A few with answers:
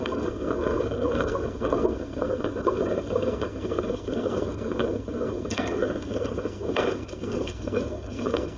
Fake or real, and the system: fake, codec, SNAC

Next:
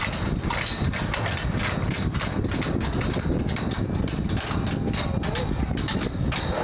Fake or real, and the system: real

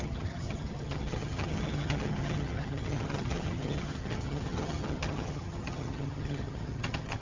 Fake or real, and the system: fake, vocoder, HiFi-GAN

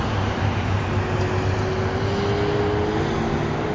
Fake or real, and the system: real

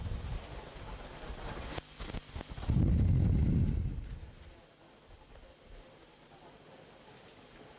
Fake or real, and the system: real